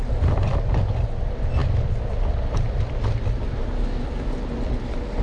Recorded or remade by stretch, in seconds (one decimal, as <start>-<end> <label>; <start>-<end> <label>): 0.0-5.2 recorded